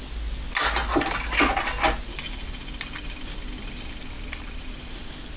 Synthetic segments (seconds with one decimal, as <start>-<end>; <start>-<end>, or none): none